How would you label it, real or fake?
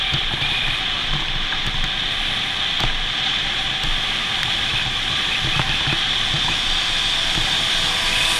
real